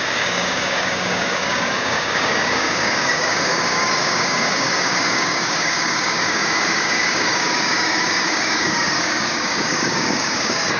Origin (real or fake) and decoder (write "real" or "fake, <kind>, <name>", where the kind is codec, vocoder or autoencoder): fake, codec, DAC